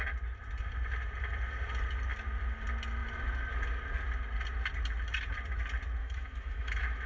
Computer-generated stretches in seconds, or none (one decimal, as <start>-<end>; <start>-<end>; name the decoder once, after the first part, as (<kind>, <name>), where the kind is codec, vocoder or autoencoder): 6.0-7.1 (autoencoder, DAC-VAE)